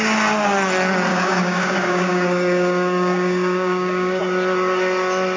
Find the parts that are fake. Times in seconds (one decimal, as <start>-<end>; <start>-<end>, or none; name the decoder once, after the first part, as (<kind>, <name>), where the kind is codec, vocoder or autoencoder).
1.1-4.2 (codec, DAC)